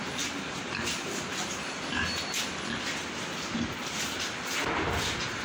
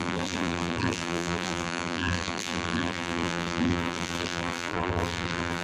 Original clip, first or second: first